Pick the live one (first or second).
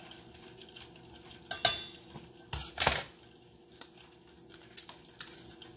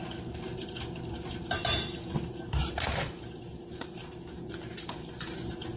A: first